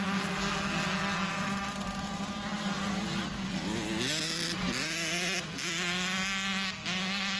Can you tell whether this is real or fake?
real